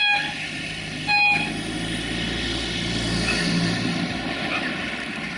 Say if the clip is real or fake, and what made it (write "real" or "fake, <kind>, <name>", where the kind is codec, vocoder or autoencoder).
real